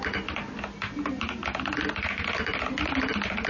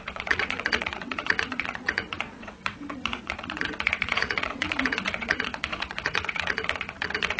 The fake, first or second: second